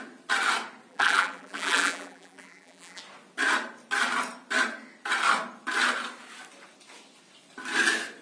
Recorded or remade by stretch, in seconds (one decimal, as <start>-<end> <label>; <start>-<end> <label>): 0.0-0.9 recorded; 0.9-3.0 remade; 3.0-8.2 recorded